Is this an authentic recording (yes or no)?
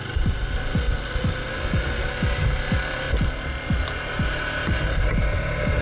yes